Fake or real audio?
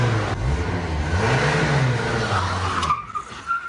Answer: real